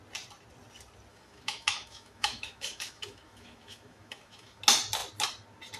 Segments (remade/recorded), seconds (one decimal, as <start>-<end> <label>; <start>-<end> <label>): 0.0-1.1 recorded; 1.1-4.6 remade; 4.6-5.8 recorded